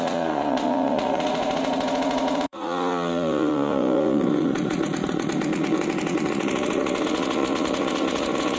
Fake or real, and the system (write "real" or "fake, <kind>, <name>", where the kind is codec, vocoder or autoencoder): fake, vocoder, Vocos